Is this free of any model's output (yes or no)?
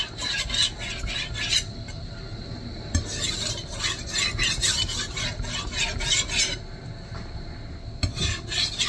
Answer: yes